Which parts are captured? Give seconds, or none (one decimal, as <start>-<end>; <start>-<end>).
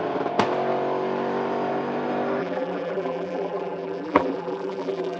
0.0-2.4